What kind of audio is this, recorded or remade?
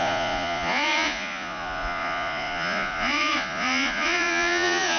remade